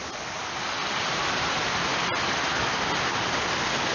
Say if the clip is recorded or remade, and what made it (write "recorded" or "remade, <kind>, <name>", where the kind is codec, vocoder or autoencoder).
recorded